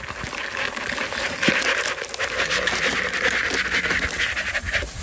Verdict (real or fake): real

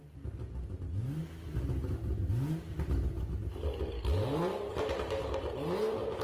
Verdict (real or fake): real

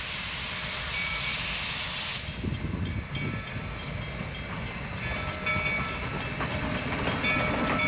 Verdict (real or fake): real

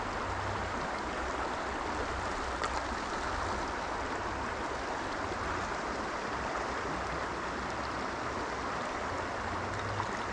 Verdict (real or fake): real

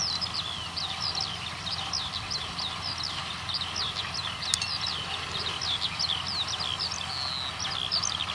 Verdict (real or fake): real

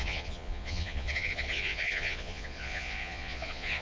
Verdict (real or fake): fake